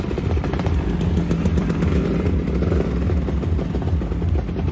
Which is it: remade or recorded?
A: recorded